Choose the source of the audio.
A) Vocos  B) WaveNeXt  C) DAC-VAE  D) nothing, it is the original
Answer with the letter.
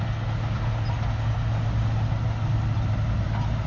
D